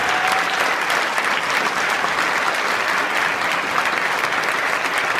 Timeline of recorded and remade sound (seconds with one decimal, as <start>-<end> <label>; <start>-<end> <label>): 0.0-5.2 recorded